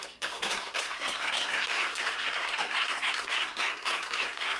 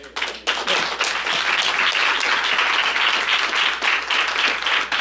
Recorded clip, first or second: second